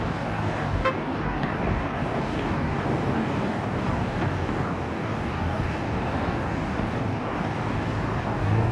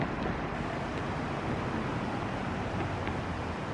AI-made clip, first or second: first